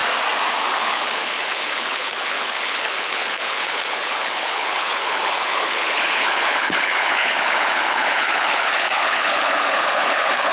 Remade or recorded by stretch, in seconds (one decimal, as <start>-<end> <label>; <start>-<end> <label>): 0.0-0.6 recorded; 0.6-10.5 remade